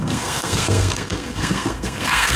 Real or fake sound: fake